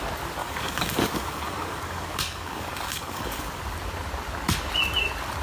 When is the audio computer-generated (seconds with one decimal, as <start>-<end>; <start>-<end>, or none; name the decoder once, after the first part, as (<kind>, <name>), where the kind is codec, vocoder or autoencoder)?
0.4-3.6 (codec, DAC)